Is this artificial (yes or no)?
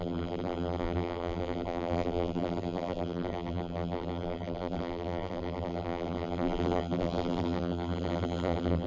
yes